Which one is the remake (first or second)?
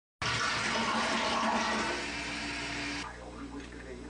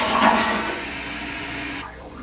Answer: second